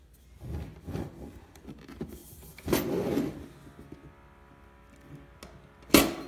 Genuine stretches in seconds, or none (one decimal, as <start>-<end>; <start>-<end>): 0.0-0.7; 1.8-6.3